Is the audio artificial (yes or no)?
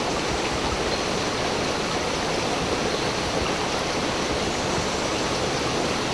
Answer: no